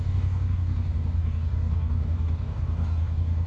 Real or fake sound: fake